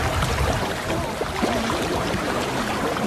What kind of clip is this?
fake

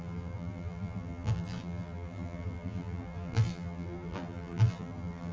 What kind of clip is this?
fake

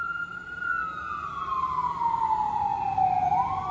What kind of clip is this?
real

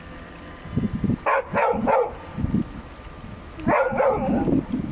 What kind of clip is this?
real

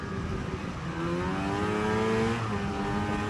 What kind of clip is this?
real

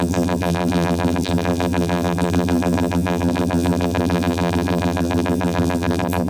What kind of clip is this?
fake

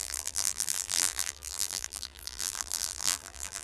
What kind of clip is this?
fake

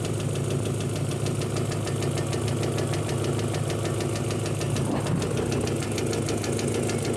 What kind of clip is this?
real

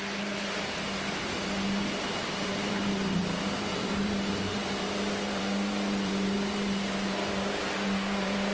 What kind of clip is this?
fake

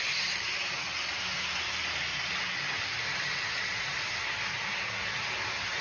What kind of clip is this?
real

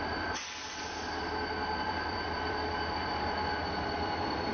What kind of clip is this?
fake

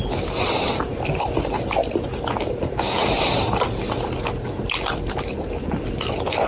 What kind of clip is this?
real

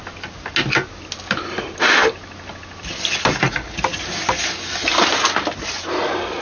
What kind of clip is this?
real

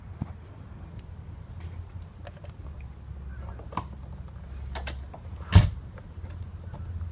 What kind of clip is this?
real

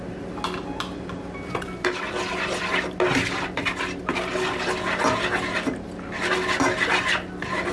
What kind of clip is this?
real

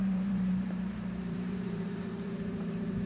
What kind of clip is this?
fake